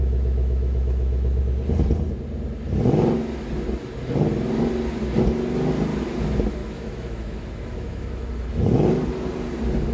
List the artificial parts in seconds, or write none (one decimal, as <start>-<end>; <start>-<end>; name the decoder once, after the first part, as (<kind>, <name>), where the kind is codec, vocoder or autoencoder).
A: 0.0-1.4 (autoencoder, DAC-VAE); 6.6-8.3